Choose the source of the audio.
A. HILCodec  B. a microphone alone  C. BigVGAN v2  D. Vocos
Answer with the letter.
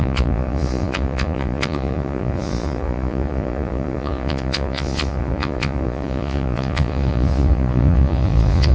D